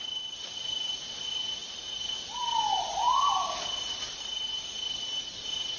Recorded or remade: recorded